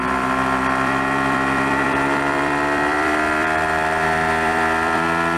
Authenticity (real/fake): fake